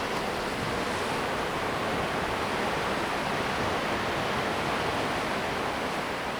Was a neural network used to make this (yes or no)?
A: no